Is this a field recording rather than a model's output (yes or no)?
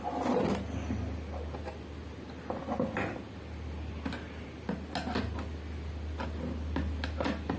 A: yes